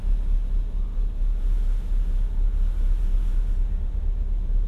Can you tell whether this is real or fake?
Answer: real